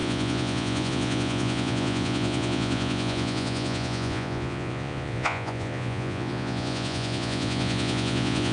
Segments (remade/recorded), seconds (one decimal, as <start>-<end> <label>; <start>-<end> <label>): 0.0-8.5 remade